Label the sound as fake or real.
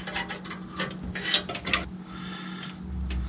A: real